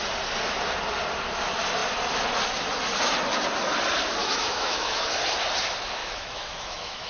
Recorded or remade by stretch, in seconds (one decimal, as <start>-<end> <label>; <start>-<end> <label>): 0.0-4.2 recorded; 4.2-5.0 remade; 5.0-6.0 recorded; 6.0-7.1 remade